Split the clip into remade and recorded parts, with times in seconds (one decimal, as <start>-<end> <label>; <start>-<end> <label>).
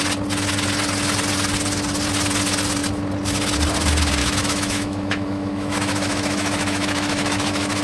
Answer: 0.0-4.2 recorded; 4.2-7.8 remade